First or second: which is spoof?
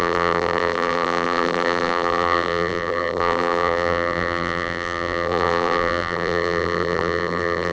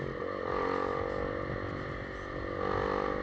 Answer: first